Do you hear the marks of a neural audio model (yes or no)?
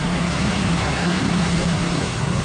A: yes